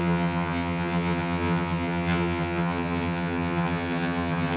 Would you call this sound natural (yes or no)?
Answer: no